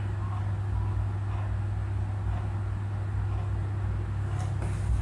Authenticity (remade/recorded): recorded